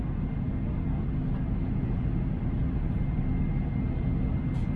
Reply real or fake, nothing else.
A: real